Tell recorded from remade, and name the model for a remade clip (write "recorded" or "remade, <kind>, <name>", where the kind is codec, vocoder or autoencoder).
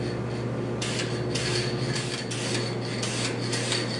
recorded